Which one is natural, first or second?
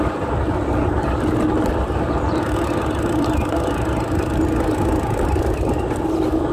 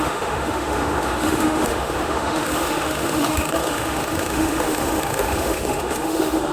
first